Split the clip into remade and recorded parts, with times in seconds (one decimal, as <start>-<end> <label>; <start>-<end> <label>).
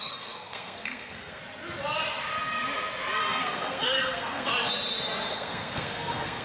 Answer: 0.0-1.4 remade; 1.4-3.2 recorded; 3.2-4.5 remade; 4.5-5.3 recorded; 5.3-6.4 remade